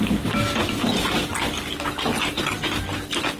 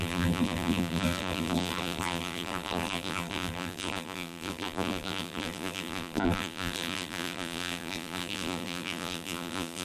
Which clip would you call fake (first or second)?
second